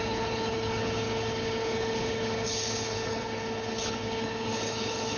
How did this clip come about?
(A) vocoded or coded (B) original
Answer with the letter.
A